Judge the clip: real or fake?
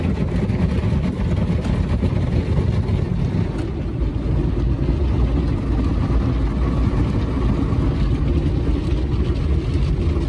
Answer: real